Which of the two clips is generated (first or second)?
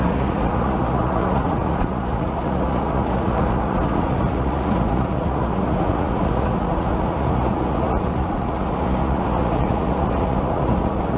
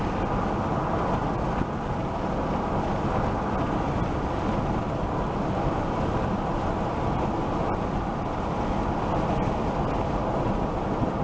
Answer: first